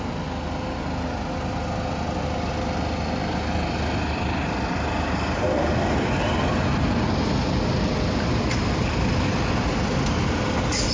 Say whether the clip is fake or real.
real